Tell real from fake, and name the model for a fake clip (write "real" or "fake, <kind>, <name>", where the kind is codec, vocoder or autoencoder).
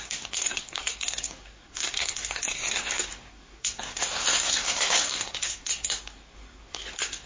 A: fake, codec, SNAC